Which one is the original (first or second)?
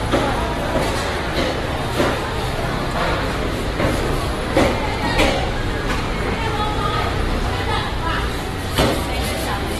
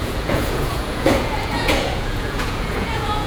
first